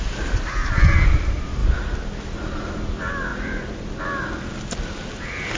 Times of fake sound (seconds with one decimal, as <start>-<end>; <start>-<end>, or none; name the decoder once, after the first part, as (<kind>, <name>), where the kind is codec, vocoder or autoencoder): none